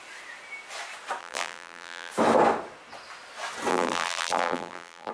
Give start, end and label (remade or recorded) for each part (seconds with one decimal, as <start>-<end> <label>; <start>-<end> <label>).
0.0-1.2 recorded; 1.2-2.1 remade; 2.1-3.7 recorded; 3.7-5.1 remade

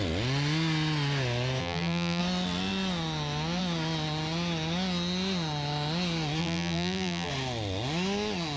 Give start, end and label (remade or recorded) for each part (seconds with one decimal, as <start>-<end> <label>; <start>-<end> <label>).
0.0-1.6 recorded; 1.6-2.2 remade; 2.2-6.4 recorded; 6.4-7.3 remade; 7.3-8.6 recorded